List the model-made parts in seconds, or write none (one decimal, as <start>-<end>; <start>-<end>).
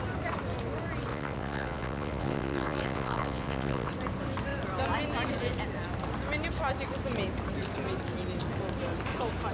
1.1-3.9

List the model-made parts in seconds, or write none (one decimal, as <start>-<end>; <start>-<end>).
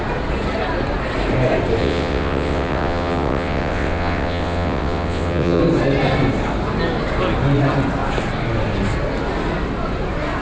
1.8-5.6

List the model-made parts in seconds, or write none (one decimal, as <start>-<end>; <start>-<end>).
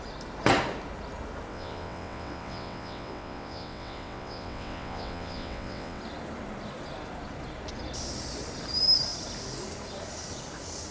1.5-6.0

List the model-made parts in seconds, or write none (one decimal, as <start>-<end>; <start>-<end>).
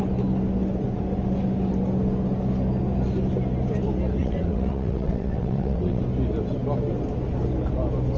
4.2-6.0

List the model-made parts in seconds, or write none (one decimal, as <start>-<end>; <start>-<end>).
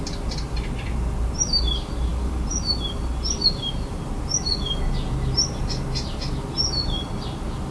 none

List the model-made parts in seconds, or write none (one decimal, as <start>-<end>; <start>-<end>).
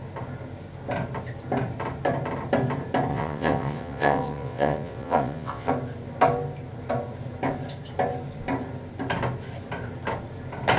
3.1-5.7